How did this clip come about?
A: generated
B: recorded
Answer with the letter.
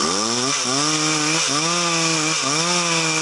B